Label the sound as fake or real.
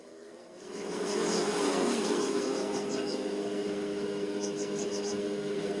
fake